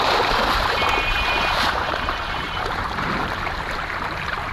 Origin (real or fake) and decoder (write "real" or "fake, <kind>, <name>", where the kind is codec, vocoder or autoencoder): fake, vocoder, BigVGAN v2